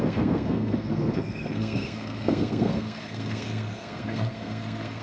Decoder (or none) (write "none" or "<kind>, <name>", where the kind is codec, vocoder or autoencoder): codec, SNAC